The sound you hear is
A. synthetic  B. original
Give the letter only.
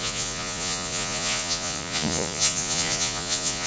A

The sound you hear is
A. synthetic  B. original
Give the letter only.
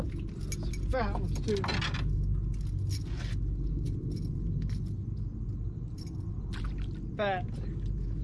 B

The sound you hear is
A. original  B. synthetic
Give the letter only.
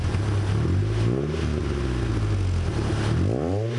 A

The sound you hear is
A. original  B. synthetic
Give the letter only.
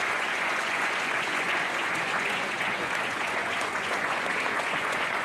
B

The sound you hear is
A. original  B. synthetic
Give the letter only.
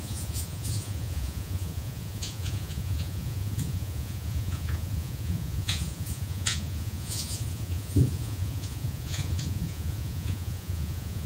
B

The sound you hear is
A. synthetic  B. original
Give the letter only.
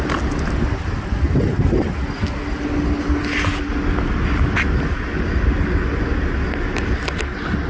B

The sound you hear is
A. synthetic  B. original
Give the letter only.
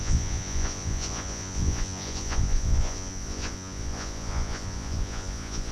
A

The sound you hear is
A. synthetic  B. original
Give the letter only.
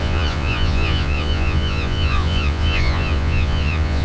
A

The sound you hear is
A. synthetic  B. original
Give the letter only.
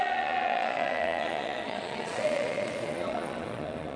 A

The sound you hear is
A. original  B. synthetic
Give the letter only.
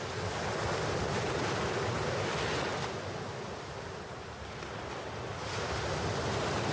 A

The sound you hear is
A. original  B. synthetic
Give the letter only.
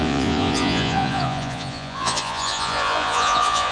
B